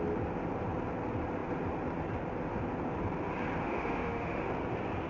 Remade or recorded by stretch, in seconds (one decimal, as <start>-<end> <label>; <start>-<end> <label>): 0.0-3.6 recorded; 3.6-4.5 remade; 4.5-5.1 recorded